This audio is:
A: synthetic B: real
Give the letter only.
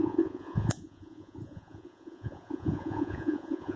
A